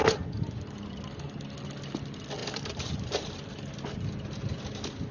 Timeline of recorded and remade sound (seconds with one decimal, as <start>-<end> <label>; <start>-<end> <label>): 0.0-1.0 remade; 1.0-2.4 recorded; 2.4-3.6 remade; 3.6-5.1 recorded